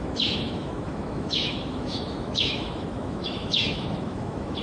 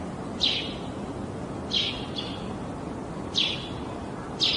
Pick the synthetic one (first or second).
first